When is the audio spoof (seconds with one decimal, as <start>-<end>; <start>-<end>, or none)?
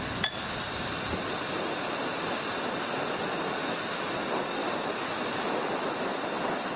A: 4.6-5.3